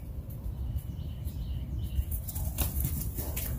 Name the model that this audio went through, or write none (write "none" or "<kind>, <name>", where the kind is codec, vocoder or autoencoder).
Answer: none